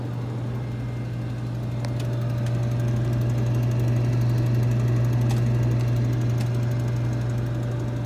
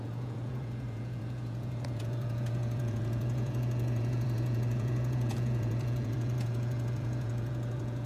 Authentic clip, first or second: first